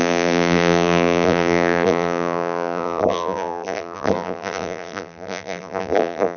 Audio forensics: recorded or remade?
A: remade